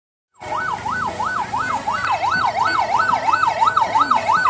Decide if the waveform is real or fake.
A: real